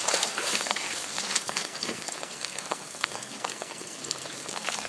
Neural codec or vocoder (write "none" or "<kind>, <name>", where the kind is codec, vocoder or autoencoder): codec, SNAC